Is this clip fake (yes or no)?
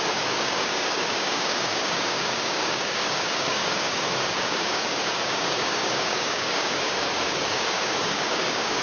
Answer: yes